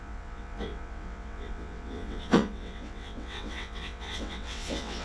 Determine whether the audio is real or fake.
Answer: fake